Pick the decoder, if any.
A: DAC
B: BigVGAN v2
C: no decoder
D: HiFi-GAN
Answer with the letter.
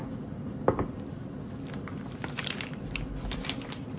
C